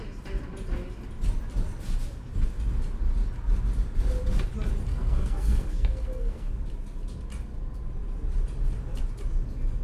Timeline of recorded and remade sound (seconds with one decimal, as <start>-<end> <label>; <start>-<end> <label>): 0.0-4.9 recorded; 4.9-6.5 remade; 6.5-9.8 recorded